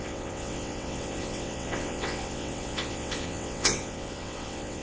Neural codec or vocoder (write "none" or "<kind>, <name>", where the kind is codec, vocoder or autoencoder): vocoder, WaveNeXt